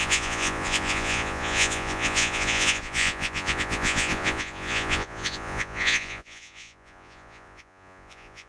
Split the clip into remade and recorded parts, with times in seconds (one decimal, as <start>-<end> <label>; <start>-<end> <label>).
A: 0.0-8.5 remade